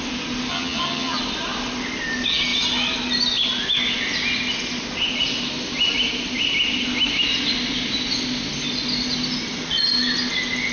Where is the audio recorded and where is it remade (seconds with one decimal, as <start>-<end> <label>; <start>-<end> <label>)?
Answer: 0.0-0.5 recorded; 0.5-1.2 remade; 1.2-10.7 recorded